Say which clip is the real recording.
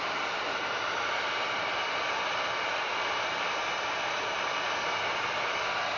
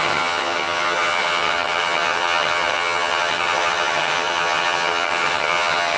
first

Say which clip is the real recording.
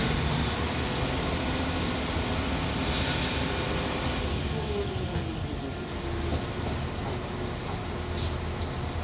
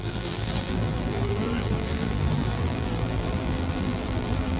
first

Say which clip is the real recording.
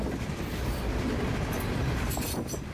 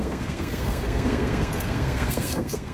first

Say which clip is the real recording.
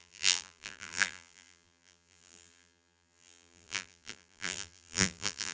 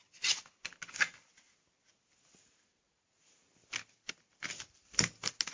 second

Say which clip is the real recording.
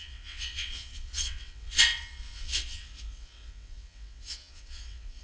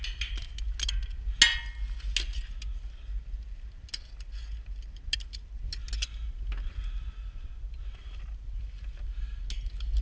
second